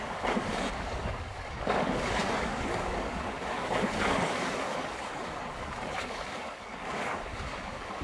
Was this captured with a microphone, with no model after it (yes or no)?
no